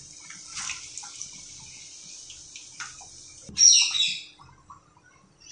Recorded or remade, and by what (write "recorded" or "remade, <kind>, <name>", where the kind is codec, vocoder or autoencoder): recorded